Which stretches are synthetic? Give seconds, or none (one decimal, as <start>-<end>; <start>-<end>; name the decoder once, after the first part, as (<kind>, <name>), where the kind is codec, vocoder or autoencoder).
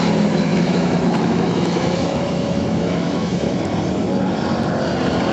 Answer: 0.5-3.7 (autoencoder, DAC-VAE)